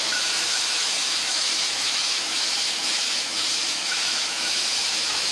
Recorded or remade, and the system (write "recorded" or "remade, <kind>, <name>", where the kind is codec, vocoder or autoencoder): remade, autoencoder, DAC-VAE